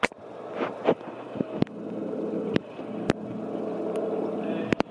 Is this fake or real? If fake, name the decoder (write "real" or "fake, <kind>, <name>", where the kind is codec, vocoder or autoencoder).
real